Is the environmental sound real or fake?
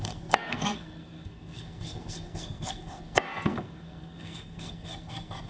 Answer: fake